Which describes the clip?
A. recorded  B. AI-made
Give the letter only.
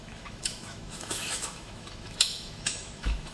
B